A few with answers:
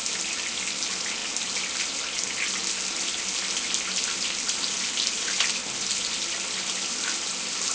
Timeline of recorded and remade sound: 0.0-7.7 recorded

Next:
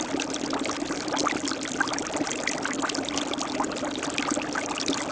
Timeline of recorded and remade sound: 0.0-5.1 recorded